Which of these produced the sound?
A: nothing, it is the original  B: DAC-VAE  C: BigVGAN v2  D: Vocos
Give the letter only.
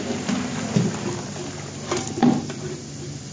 A